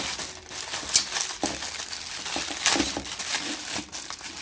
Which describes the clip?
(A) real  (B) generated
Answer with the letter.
A